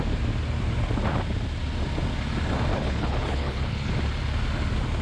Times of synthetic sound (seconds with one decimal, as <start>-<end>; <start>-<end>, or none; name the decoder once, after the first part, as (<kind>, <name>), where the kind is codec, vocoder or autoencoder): 2.7-3.9 (codec, HILCodec)